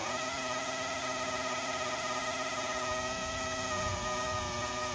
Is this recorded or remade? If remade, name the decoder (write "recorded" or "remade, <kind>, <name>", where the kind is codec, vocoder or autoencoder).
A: remade, vocoder, Vocos